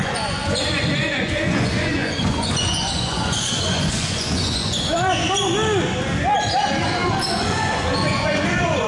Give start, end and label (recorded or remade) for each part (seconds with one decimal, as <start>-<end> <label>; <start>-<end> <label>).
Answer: 0.0-5.2 remade; 5.2-7.3 recorded; 7.3-8.9 remade